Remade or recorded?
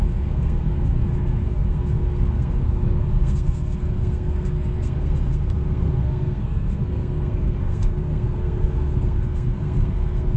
remade